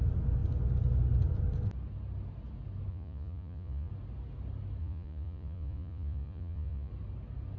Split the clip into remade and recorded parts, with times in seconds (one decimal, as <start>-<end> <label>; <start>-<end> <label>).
0.0-2.9 recorded; 2.9-3.9 remade; 3.9-4.8 recorded; 4.8-6.9 remade; 6.9-7.6 recorded